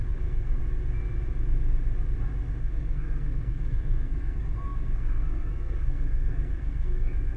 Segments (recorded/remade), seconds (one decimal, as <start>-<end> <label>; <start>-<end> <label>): 0.0-0.6 remade; 0.6-2.6 recorded; 2.6-7.4 remade